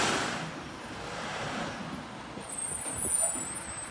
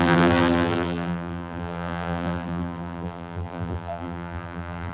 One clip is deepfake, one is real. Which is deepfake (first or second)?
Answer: second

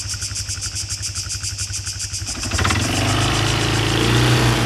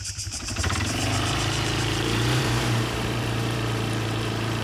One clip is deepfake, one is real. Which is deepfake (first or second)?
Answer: second